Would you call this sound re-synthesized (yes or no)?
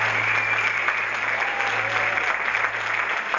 no